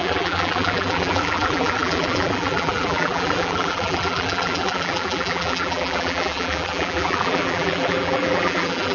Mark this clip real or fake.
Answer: fake